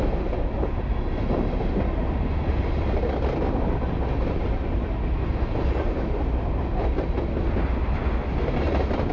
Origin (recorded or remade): recorded